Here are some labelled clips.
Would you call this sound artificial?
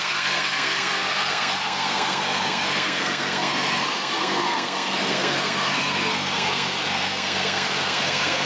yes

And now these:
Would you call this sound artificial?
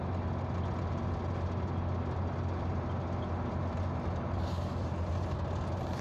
no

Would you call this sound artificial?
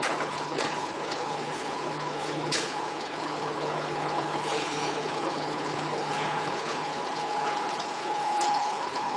yes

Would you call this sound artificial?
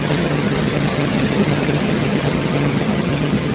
yes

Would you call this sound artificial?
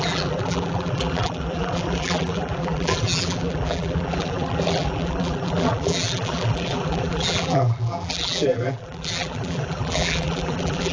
yes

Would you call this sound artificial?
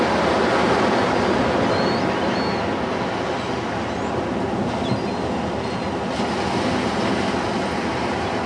no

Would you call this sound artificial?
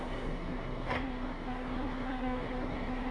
yes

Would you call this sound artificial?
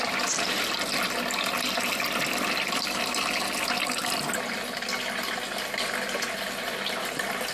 no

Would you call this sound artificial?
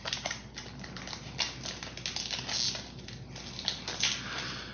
no